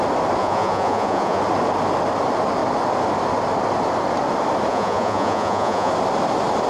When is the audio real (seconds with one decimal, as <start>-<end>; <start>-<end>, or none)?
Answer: 0.0-0.4; 1.4-4.7; 5.9-6.7